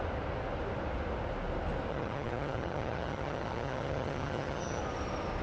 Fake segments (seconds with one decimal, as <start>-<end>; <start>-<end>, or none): 1.9-4.8